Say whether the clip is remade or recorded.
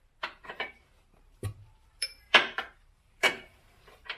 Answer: remade